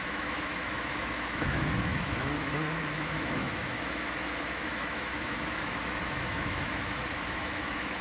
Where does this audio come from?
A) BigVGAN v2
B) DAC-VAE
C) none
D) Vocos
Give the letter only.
B